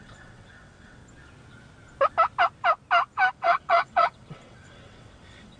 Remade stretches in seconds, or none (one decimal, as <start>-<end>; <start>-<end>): 0.0-1.0; 3.3-5.6